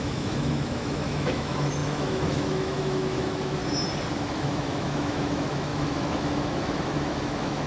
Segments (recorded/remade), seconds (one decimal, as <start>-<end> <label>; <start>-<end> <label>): 0.0-3.6 remade; 3.6-4.1 recorded; 4.1-7.7 remade